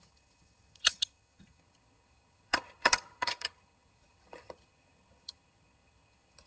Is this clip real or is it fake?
fake